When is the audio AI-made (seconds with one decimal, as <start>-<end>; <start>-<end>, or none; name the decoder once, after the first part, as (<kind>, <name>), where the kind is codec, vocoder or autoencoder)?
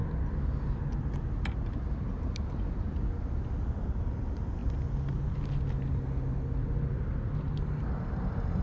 none